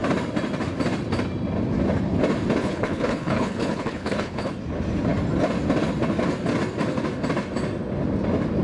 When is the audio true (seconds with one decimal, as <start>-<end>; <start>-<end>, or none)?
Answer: 0.0-2.6; 4.5-8.6